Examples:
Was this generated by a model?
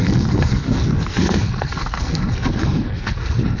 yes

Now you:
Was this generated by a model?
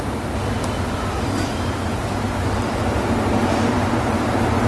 no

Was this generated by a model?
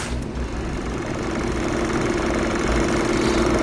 no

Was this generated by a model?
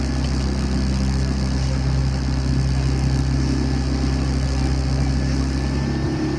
no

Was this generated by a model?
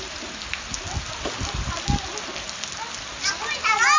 no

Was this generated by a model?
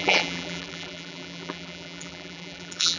yes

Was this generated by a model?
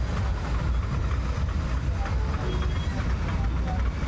no